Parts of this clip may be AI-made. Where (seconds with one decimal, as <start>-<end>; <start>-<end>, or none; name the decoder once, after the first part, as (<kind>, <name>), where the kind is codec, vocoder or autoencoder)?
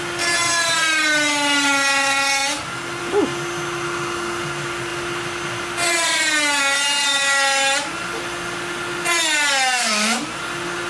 none